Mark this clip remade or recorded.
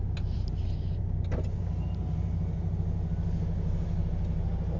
recorded